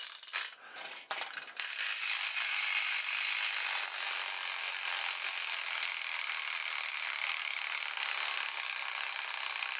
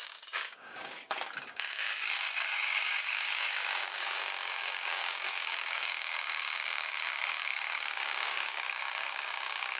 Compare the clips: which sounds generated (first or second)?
second